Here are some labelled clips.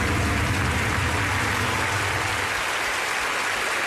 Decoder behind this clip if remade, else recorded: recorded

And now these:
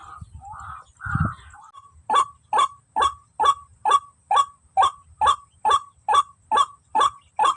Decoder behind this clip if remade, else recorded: recorded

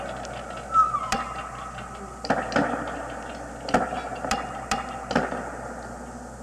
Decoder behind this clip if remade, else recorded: recorded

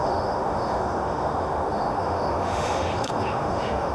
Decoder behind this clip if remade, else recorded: remade, autoencoder, DAC-VAE